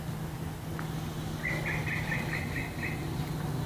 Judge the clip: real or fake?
real